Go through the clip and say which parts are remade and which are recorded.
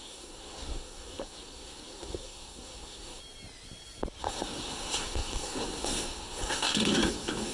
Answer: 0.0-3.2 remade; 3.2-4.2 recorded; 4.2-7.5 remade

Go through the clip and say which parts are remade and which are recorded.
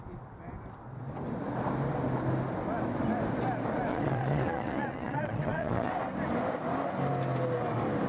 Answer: 0.0-3.9 recorded; 3.9-5.9 remade; 5.9-8.1 recorded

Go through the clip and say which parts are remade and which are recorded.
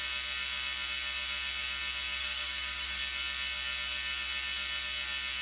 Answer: 0.0-2.2 recorded; 2.2-3.0 remade; 3.0-5.4 recorded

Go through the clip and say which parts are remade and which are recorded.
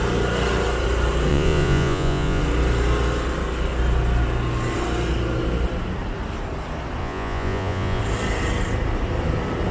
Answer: 0.0-1.3 recorded; 1.3-2.4 remade; 2.4-7.0 recorded; 7.0-8.0 remade; 8.0-9.7 recorded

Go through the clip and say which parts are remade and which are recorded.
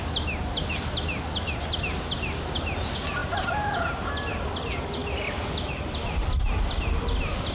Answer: 0.0-7.5 recorded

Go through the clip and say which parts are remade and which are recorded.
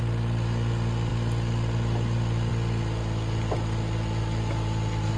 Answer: 0.0-5.2 recorded